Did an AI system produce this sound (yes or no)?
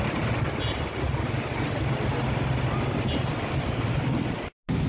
no